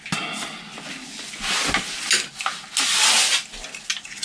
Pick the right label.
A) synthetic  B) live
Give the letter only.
B